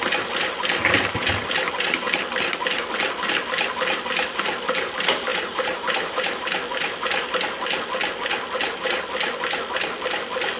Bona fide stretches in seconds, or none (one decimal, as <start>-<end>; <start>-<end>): 0.0-5.3; 6.4-10.6